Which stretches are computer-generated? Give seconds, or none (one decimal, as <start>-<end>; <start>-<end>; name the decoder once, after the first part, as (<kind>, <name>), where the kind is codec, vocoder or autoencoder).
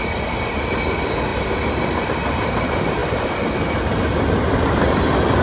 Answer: none